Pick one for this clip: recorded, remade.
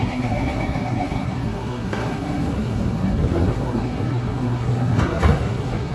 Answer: remade